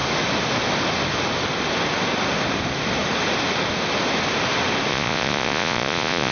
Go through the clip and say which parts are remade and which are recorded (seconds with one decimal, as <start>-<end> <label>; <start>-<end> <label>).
0.0-4.9 recorded; 4.9-6.3 remade